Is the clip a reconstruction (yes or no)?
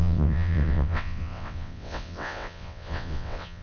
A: yes